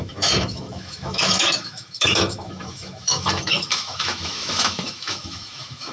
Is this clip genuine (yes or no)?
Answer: no